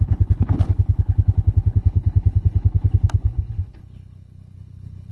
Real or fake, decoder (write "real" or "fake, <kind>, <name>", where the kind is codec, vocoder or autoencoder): fake, codec, HILCodec